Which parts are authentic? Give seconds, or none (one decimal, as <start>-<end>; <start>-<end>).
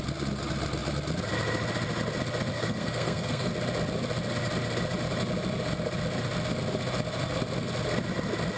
0.0-2.5; 3.5-8.6